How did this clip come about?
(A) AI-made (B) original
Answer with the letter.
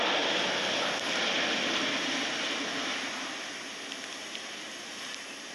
B